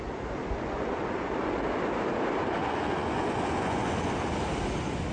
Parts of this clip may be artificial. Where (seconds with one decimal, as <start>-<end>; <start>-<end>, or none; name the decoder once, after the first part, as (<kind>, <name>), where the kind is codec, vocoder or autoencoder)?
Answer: 0.4-1.6 (vocoder, Vocos); 2.6-4.1